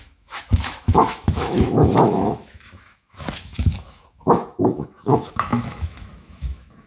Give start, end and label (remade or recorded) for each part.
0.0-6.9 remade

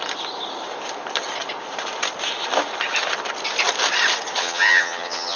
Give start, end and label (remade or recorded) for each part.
0.0-4.4 recorded; 4.4-5.4 remade

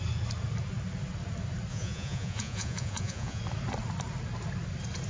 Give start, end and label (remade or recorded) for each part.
0.0-1.7 recorded; 1.7-3.4 remade; 3.4-5.1 recorded

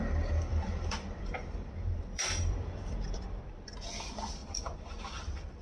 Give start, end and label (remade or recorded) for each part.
0.0-0.5 recorded; 0.5-3.4 remade; 3.4-4.4 recorded; 4.4-5.0 remade; 5.0-5.6 recorded

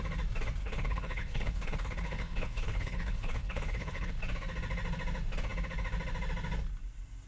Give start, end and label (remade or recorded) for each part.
0.0-0.6 recorded; 0.6-4.1 remade; 4.1-7.3 recorded